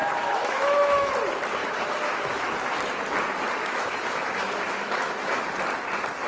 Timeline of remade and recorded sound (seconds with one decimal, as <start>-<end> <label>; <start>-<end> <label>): 0.0-1.1 remade; 1.1-1.6 recorded; 1.6-2.5 remade; 2.5-3.6 recorded; 3.6-5.4 remade; 5.4-6.3 recorded